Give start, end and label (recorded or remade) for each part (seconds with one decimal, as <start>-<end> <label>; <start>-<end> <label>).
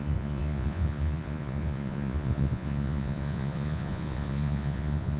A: 0.0-5.2 remade